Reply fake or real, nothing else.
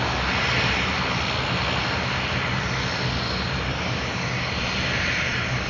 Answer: real